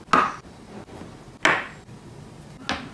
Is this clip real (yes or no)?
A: yes